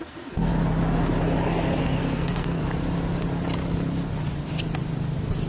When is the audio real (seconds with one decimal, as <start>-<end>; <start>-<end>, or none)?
0.5-1.8; 2.6-5.5